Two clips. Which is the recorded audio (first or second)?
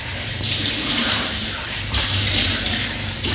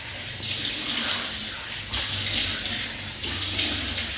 second